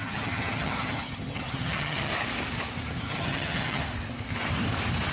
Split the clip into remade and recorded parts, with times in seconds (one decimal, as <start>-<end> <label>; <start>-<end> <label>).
0.0-2.1 remade; 2.1-3.0 recorded; 3.0-3.8 remade; 3.8-5.1 recorded